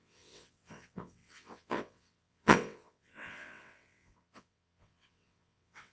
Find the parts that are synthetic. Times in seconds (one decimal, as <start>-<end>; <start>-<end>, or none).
0.0-5.9